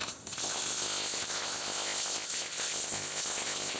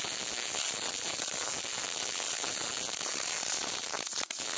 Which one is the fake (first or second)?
first